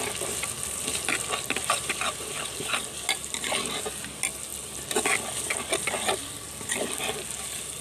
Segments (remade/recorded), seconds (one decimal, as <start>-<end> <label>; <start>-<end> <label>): 0.0-7.8 recorded